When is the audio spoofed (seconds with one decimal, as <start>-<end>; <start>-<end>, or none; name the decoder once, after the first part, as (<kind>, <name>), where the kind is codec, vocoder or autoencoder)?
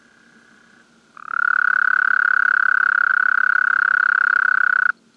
none